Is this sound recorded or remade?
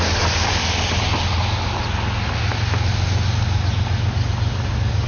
recorded